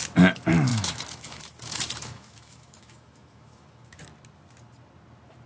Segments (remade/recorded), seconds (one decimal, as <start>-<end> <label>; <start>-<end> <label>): 0.0-0.7 recorded; 0.7-4.0 remade; 4.0-5.5 recorded

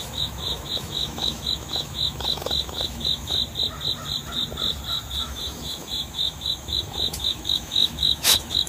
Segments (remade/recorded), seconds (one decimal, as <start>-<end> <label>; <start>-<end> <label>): 0.0-3.4 remade; 3.4-5.2 recorded; 5.2-8.7 remade

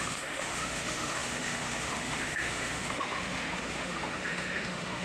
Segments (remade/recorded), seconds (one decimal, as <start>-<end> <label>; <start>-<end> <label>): 0.0-5.0 remade

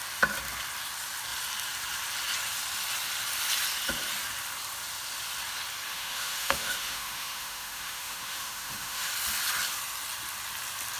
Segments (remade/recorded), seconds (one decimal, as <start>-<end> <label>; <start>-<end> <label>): 0.0-5.9 recorded; 5.9-9.1 remade; 9.1-11.0 recorded

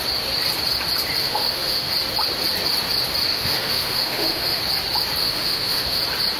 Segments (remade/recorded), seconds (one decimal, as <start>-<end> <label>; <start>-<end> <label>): 0.0-1.2 recorded; 1.2-1.9 remade; 1.9-3.3 recorded; 3.3-4.6 remade; 4.6-5.2 recorded; 5.2-6.0 remade; 6.0-6.4 recorded

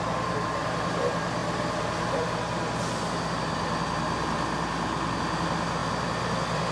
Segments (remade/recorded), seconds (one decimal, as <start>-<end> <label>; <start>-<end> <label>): 0.0-6.7 recorded